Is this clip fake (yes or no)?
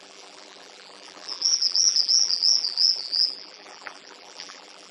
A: yes